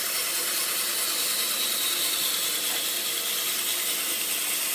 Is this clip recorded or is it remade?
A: recorded